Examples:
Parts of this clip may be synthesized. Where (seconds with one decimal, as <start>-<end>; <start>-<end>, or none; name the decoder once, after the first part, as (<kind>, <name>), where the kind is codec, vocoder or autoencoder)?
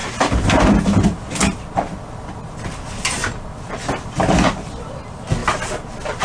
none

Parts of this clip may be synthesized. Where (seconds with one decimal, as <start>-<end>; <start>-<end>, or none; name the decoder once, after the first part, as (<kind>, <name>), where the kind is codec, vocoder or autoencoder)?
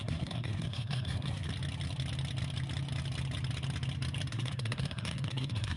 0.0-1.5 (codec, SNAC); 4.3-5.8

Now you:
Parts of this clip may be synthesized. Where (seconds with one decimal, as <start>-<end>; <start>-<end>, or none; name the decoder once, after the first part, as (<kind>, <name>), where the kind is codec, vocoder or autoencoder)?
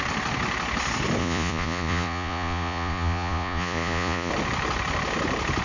1.2-4.3 (vocoder, Vocos)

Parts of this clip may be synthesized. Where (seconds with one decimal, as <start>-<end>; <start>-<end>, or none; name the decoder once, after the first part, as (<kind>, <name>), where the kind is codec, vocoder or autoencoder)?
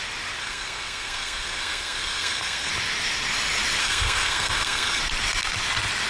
0.4-2.7 (codec, SNAC); 3.8-5.0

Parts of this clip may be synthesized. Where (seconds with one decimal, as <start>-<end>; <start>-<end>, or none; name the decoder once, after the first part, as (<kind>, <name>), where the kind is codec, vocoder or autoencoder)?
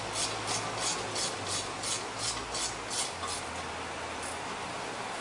none